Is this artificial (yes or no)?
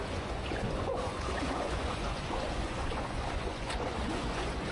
yes